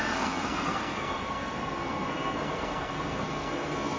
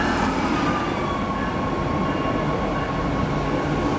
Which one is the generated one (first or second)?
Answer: first